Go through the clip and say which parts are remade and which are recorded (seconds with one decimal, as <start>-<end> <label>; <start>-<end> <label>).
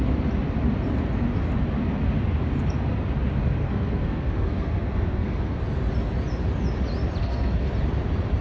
0.0-3.6 recorded; 3.6-5.6 remade; 5.6-7.2 recorded; 7.2-7.7 remade; 7.7-8.4 recorded